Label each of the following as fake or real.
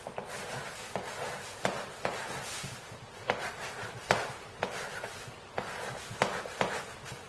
real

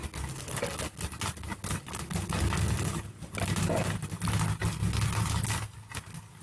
real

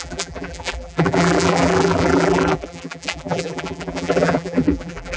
fake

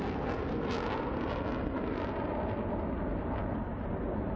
real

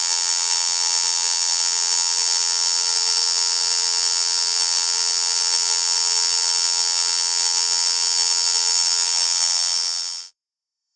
fake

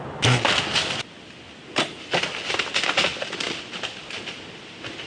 real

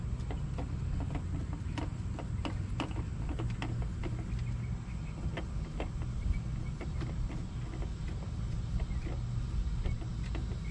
real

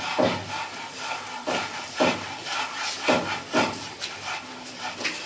real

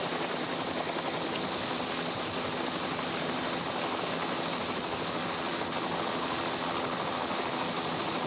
real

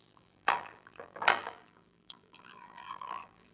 fake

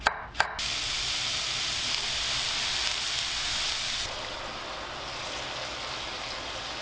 real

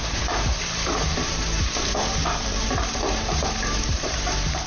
fake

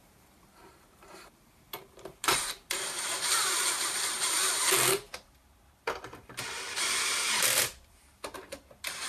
fake